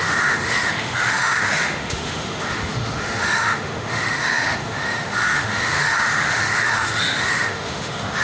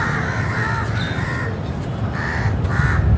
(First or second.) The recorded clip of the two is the second